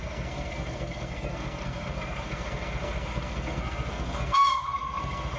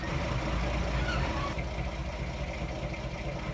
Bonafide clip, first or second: second